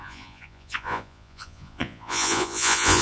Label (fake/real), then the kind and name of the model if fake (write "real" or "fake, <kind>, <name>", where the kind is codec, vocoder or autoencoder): fake, vocoder, Vocos